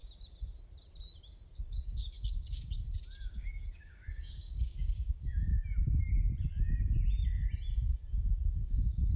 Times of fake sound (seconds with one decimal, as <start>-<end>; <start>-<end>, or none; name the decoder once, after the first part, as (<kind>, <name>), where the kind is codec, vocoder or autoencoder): 1.6-5.5 (codec, DAC); 8.6-9.2